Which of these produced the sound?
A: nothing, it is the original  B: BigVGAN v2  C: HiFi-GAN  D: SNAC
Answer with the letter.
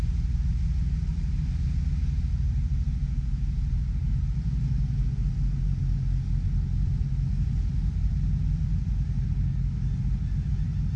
A